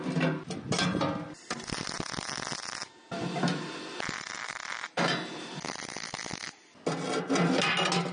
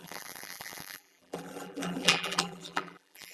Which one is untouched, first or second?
first